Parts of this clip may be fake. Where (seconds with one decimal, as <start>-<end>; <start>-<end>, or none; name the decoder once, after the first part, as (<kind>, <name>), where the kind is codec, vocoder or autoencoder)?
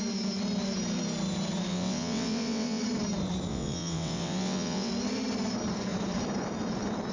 1.7-2.8 (vocoder, WaveNeXt); 3.5-4.9